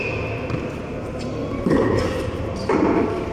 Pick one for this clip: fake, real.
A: real